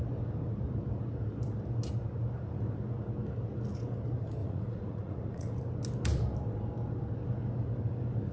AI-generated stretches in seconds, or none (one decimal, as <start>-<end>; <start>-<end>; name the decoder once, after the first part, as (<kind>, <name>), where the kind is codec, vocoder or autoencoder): 4.4-5.6 (vocoder, Vocos)